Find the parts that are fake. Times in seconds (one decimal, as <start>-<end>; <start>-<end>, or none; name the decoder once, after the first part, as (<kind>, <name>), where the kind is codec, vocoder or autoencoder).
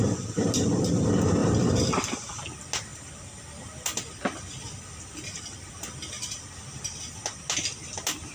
1.4-2.3 (vocoder, BigVGAN v2)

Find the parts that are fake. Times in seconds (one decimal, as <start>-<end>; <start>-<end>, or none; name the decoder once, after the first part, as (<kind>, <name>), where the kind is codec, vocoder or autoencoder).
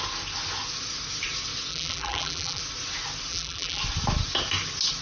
1.7-2.6 (vocoder, BigVGAN v2); 3.3-3.8